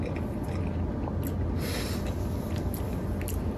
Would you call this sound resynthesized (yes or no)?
no